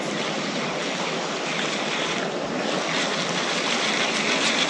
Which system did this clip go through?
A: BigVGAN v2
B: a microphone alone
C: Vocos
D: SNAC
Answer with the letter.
B